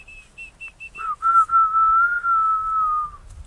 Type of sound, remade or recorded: recorded